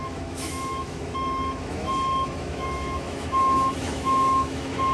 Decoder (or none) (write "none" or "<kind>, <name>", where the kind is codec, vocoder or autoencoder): autoencoder, DAC-VAE